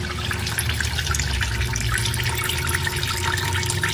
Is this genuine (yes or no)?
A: yes